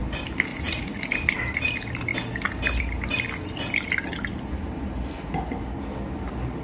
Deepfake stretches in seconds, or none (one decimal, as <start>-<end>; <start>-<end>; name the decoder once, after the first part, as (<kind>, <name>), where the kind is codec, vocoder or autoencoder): 0.5-1.0 (vocoder, Vocos)